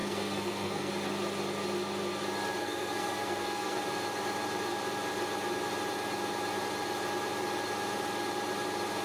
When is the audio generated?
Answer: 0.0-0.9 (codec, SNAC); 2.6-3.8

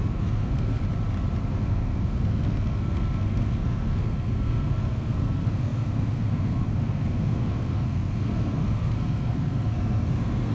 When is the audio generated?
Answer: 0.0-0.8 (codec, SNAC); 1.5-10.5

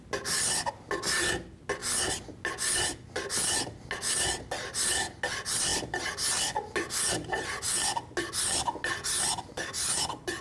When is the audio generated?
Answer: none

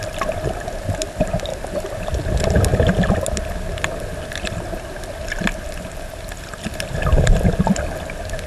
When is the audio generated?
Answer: none

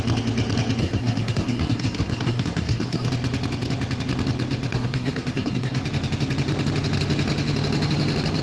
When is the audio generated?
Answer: 0.8-3.1 (codec, SNAC); 4.7-5.8